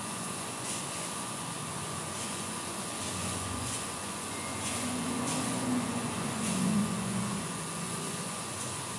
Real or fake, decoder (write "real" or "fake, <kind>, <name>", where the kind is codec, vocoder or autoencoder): fake, vocoder, Vocos